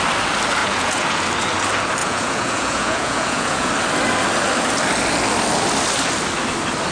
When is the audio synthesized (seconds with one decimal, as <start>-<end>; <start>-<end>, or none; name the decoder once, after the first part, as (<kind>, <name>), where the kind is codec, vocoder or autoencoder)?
0.6-1.2 (vocoder, Vocos); 2.0-3.7